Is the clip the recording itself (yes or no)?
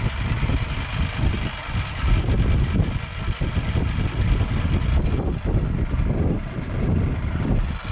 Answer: yes